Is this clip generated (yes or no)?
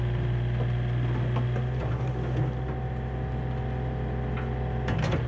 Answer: no